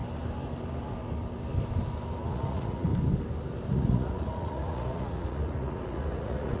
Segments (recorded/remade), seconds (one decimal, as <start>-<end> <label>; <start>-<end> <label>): 0.0-2.3 recorded; 2.3-2.9 remade; 2.9-3.7 recorded; 3.7-6.6 remade